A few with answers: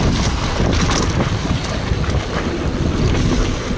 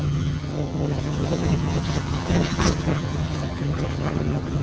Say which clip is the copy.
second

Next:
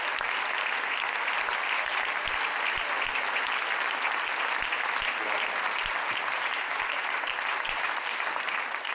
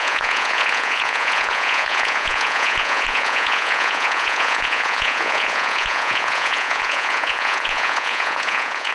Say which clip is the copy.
second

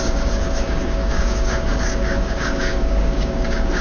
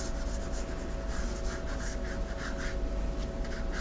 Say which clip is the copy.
first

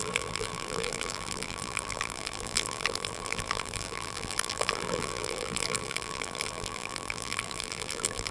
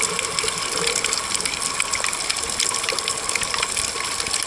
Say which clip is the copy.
first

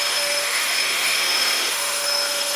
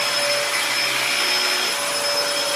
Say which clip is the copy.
first